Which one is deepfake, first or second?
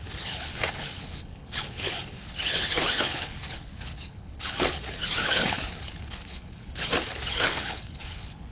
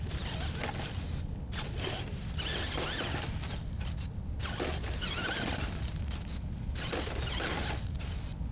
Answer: first